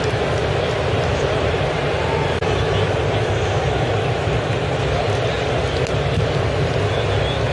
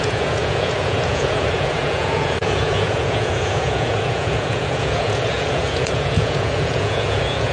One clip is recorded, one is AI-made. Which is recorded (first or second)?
first